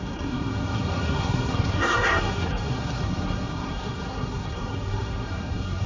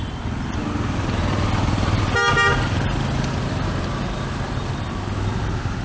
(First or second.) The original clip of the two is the second